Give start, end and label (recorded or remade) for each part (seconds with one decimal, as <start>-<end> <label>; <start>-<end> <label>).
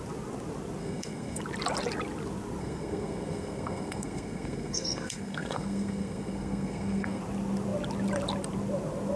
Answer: 0.0-0.8 recorded; 0.8-1.4 remade; 1.4-2.6 recorded; 2.6-7.2 remade; 7.2-9.2 recorded